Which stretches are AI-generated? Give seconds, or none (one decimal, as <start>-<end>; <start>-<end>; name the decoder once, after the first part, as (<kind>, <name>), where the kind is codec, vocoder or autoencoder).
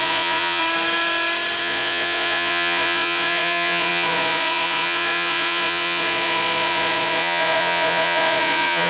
0.0-0.6 (vocoder, Vocos); 1.6-8.9